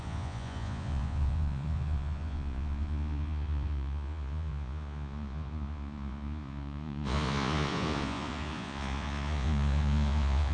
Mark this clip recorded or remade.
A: remade